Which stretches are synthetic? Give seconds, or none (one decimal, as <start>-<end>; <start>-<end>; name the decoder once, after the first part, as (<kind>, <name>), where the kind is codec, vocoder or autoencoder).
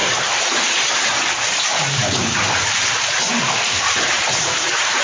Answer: 0.0-5.0 (vocoder, BigVGAN v2)